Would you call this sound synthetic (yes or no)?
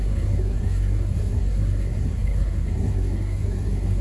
yes